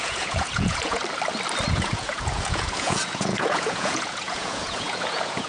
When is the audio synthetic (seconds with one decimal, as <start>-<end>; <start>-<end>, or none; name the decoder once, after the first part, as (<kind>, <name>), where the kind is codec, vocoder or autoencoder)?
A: 0.0-1.0 (vocoder, Vocos); 1.7-5.5